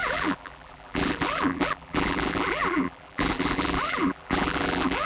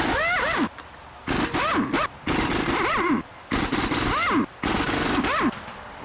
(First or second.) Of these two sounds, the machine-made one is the first